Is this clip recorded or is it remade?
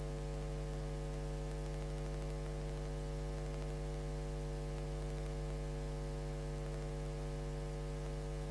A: recorded